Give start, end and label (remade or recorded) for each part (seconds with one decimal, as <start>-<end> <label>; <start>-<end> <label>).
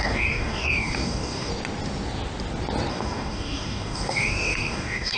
0.0-1.5 remade; 1.5-2.9 recorded; 2.9-5.2 remade